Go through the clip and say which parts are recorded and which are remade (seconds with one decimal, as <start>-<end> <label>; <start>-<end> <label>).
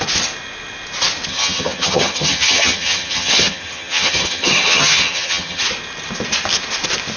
0.0-1.3 recorded; 1.3-5.6 remade; 5.6-7.2 recorded